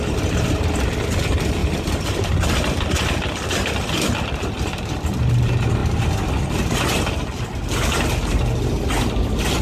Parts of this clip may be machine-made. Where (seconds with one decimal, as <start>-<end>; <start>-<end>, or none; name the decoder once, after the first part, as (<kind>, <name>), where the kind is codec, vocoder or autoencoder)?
none